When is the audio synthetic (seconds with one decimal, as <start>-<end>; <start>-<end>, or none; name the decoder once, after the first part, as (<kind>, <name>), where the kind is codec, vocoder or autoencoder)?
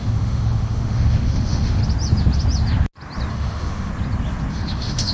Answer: 0.0-1.8 (autoencoder, DAC-VAE); 3.3-3.9; 4.5-5.1